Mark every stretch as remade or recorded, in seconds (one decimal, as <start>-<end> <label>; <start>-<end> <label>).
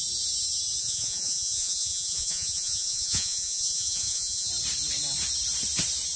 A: 0.0-0.8 recorded; 0.8-4.5 remade; 4.5-6.2 recorded